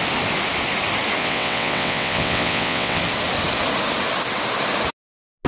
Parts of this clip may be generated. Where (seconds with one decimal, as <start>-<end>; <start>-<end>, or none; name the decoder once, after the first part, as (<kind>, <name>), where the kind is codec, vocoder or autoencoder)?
1.2-3.0 (vocoder, WaveNeXt)